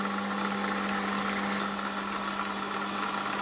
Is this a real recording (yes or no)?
yes